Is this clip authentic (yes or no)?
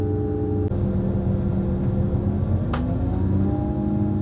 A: yes